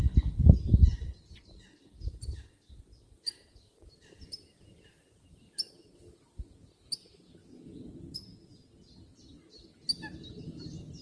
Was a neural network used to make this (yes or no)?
no